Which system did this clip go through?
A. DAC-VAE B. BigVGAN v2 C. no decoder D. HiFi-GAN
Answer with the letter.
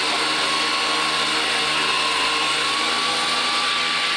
C